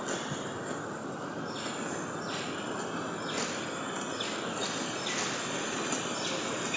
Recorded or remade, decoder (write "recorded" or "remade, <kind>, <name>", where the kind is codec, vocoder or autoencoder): recorded